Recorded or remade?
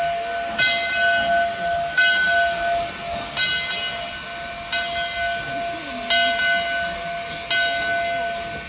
recorded